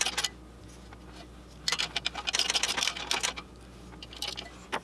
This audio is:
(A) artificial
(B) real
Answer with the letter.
B